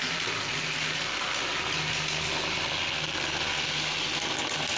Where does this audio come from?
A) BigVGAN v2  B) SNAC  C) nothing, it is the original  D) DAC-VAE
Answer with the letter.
C